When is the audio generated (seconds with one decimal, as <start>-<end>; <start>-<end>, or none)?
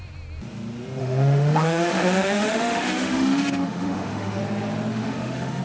1.0-4.4; 4.9-5.6